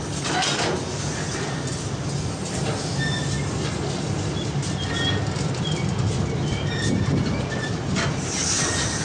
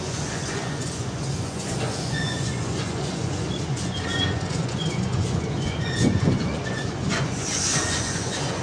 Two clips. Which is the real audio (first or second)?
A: first